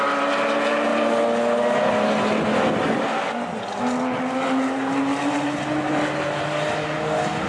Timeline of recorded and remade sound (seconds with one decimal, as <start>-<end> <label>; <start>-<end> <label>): 0.0-7.5 recorded